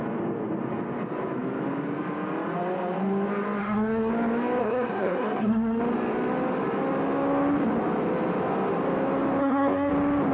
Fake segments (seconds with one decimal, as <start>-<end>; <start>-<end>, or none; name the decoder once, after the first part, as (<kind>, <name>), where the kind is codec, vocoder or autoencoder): 3.6-4.1 (codec, SNAC); 4.6-5.8; 9.4-9.9